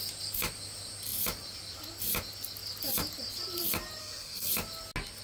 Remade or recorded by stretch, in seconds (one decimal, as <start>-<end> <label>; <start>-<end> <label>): 0.0-4.0 recorded; 4.0-4.5 remade; 4.5-5.2 recorded